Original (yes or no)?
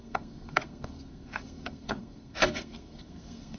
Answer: no